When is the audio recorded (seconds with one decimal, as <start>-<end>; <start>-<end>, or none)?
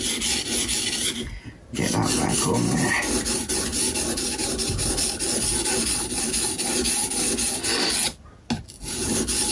0.0-9.5